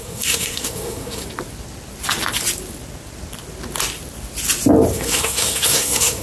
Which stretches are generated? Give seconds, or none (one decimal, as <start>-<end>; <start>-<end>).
0.0-1.2; 4.9-6.2